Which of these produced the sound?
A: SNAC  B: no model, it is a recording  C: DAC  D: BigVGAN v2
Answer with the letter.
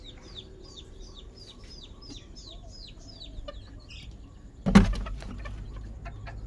B